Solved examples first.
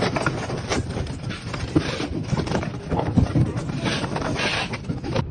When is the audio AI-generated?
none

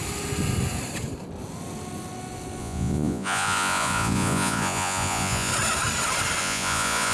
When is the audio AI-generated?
2.6-5.5 (vocoder, Vocos); 6.4-7.1

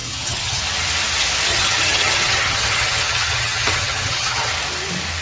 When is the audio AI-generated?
0.0-0.6 (vocoder, HiFi-GAN); 1.5-4.5

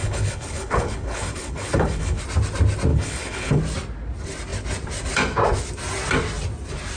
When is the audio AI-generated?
0.0-2.2 (codec, HILCodec); 2.9-3.6

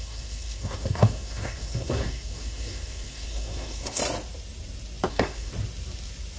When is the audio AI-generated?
0.0-4.0 (codec, SNAC); 5.1-5.5

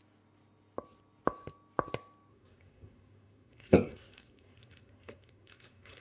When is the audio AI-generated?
2.3-6.0 (codec, SNAC)